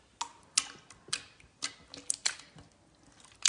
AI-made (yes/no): no